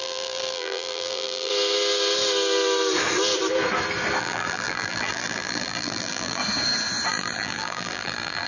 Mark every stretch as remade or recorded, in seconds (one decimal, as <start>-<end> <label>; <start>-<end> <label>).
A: 0.0-1.5 remade; 1.5-4.2 recorded; 4.2-6.4 remade; 6.4-7.1 recorded; 7.1-8.5 remade